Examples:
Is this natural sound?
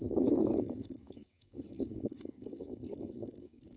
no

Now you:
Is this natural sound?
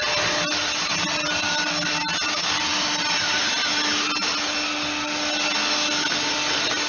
yes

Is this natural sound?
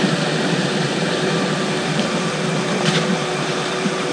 no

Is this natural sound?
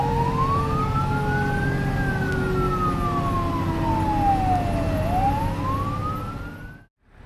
yes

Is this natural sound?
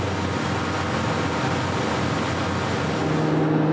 yes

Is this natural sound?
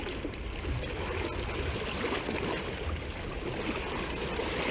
yes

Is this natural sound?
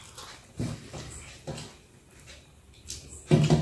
yes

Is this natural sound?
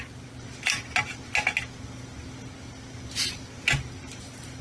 yes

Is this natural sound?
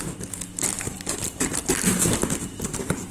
no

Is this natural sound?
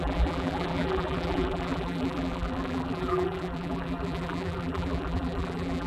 no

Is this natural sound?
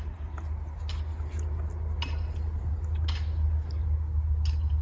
yes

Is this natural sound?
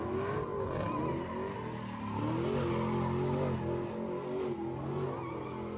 yes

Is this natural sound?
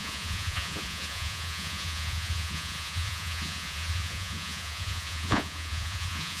no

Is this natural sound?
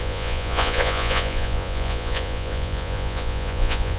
no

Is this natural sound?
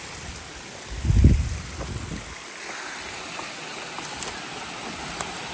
yes